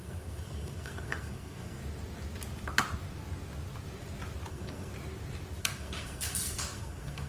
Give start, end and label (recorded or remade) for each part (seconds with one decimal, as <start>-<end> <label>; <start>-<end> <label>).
0.0-1.8 remade; 1.8-4.5 recorded; 4.5-4.9 remade; 4.9-5.6 recorded; 5.6-7.3 remade

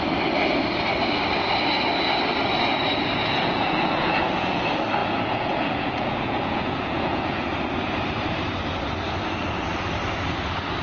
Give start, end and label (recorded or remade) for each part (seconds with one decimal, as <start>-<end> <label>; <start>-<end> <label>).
0.0-3.2 recorded; 3.2-4.6 remade; 4.6-5.0 recorded; 5.0-7.5 remade; 7.5-10.8 recorded

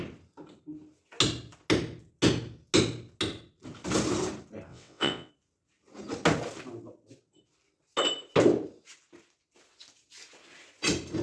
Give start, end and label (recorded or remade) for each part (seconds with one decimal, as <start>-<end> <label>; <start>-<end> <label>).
0.0-4.7 recorded; 4.7-5.3 remade; 5.3-11.2 recorded